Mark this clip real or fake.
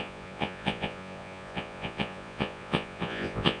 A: fake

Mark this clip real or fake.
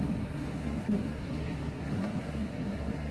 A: fake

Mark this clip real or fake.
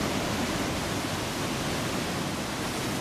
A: real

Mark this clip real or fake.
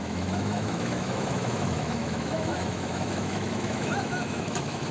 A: fake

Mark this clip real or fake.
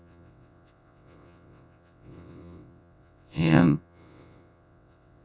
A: fake